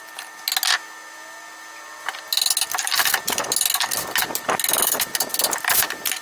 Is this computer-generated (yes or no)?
no